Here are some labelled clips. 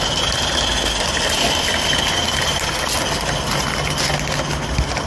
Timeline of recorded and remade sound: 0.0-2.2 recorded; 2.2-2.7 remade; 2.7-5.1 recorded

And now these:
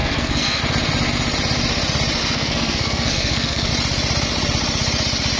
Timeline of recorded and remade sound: 0.0-0.6 remade; 0.6-2.2 recorded; 2.2-3.7 remade; 3.7-5.4 recorded

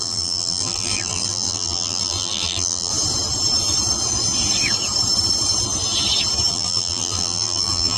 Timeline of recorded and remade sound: 0.0-2.9 remade; 2.9-6.5 recorded; 6.5-8.0 remade

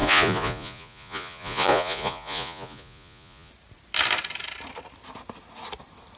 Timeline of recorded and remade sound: 0.0-3.5 remade; 3.5-6.2 recorded

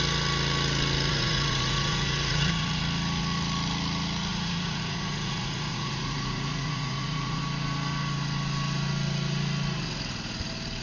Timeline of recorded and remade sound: 0.0-1.1 recorded; 1.1-2.8 remade; 2.8-4.3 recorded; 4.3-7.4 remade; 7.4-10.8 recorded